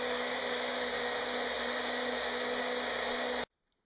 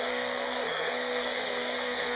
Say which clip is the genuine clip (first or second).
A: first